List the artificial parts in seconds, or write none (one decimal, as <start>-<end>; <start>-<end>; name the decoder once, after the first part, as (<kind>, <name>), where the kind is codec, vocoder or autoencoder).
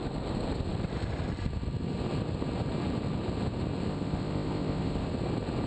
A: 3.9-5.1 (codec, ZipCodec)